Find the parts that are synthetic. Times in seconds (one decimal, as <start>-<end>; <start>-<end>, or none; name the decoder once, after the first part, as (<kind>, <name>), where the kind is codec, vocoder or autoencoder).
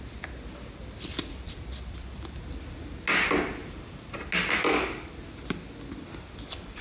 none